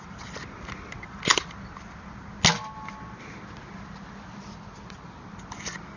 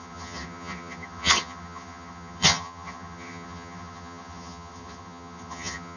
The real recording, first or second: first